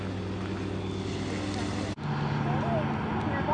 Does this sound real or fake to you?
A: real